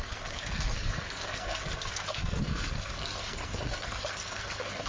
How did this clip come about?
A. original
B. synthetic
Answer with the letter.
B